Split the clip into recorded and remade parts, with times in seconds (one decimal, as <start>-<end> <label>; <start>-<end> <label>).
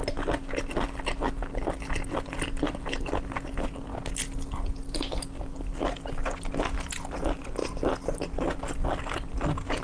0.0-9.8 recorded